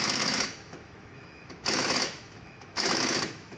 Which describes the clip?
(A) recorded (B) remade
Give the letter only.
B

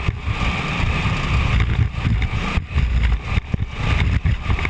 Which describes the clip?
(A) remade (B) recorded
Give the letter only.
B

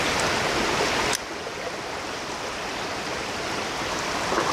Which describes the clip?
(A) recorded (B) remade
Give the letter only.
A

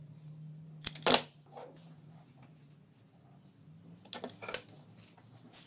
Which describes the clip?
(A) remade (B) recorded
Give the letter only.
B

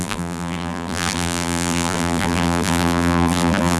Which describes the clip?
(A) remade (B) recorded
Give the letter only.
A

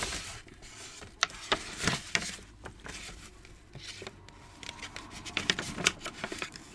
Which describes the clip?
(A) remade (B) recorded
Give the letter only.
A